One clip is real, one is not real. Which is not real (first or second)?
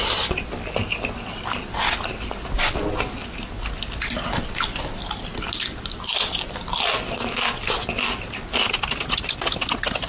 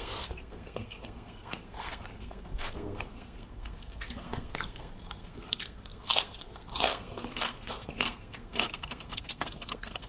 second